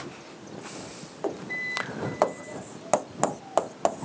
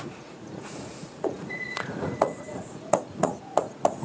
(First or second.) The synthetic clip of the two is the second